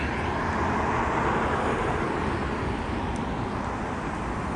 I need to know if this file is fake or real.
real